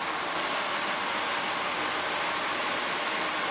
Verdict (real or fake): real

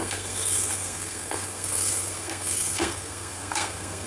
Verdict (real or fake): fake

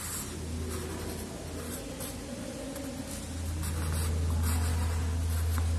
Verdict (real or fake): real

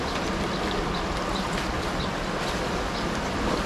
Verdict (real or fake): real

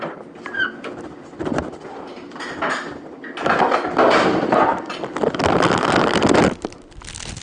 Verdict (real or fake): real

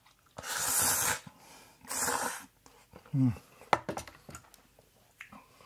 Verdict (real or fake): real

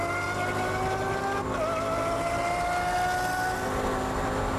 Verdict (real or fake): real